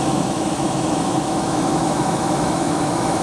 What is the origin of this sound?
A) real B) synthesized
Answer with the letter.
B